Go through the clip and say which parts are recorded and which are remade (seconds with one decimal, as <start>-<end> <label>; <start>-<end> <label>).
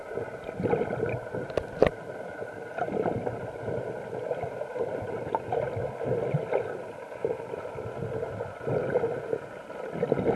0.0-10.4 recorded